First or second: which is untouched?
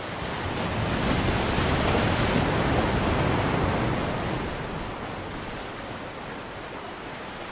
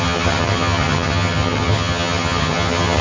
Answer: first